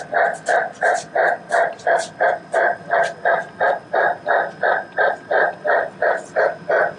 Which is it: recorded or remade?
recorded